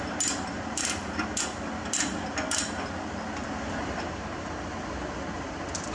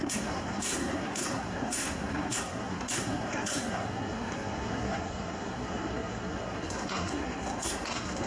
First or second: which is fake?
second